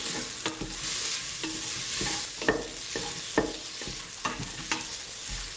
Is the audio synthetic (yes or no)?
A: no